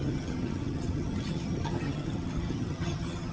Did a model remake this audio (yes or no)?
yes